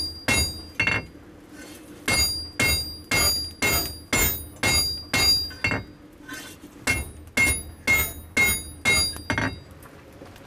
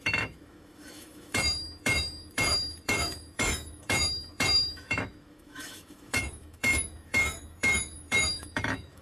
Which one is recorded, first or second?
first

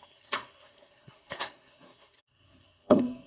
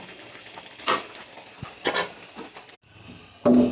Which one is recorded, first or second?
second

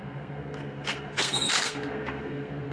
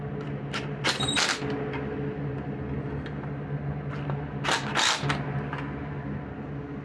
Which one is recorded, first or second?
second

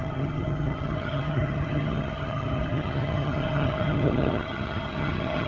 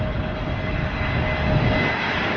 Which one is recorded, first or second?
second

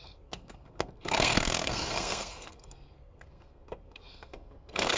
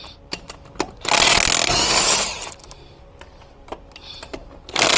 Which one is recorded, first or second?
second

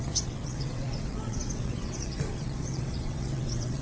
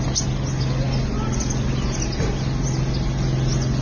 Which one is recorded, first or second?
second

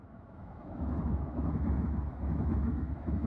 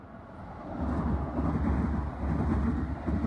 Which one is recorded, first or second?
second